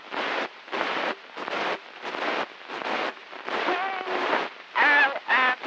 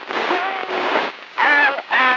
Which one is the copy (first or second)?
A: second